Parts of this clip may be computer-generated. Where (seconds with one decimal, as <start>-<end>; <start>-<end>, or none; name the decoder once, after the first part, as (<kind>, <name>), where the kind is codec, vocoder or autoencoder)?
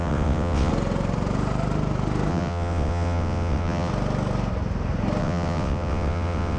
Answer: 0.0-0.7 (vocoder, WaveNeXt); 2.3-3.9; 5.2-6.6